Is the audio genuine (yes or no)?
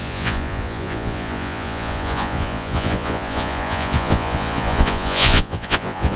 no